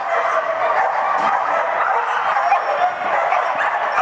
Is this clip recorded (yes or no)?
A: yes